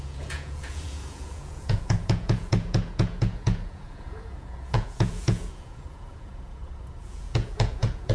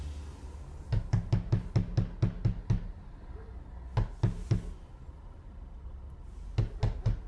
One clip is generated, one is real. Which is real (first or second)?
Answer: second